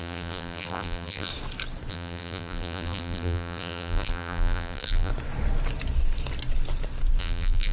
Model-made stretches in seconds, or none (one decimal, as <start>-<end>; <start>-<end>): 0.0-1.3; 1.9-5.1; 7.2-7.7